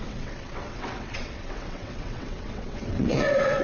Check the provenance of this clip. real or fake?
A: fake